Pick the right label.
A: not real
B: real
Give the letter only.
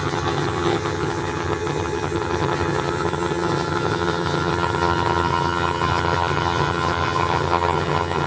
A